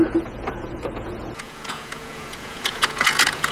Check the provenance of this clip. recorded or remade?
remade